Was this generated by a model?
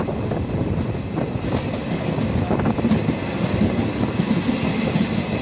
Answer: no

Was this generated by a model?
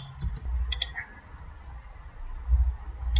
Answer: no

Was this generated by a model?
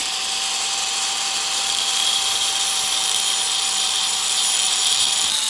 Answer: yes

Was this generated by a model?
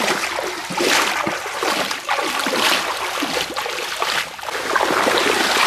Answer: no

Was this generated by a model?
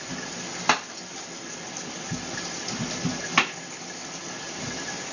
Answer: no